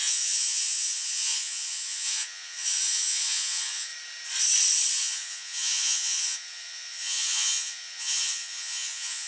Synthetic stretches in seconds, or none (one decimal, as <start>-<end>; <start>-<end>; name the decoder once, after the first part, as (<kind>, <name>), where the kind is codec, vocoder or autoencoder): 0.0-3.9 (vocoder, Vocos); 4.9-9.3